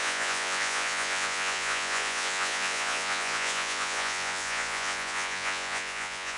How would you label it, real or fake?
fake